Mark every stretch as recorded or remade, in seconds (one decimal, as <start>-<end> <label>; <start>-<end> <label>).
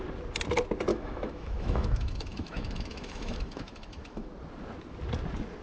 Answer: 0.0-0.9 recorded; 0.9-4.3 remade; 4.3-5.6 recorded